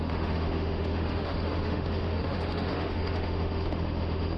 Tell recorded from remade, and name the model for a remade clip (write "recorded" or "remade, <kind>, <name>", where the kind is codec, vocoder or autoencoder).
remade, autoencoder, DAC-VAE